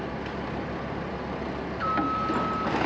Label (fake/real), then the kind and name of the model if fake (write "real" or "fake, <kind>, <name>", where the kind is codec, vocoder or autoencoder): real